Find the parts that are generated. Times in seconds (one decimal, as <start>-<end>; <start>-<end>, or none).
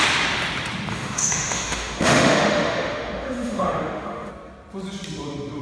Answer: 0.9-4.3